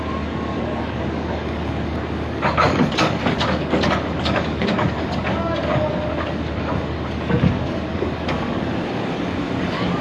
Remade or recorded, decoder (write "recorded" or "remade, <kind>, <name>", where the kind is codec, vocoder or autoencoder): remade, codec, DAC